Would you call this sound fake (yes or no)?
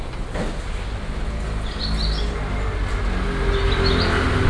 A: no